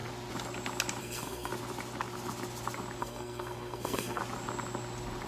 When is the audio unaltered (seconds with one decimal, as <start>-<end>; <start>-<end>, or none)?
0.0-1.0; 1.5-3.0; 4.2-5.3